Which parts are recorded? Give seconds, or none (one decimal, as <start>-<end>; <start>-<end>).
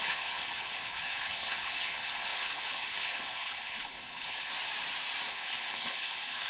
4.5-5.3